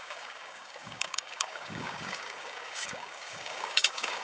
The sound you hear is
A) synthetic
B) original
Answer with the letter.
A